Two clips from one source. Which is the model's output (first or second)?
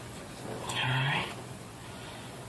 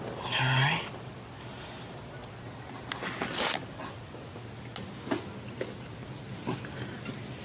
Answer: first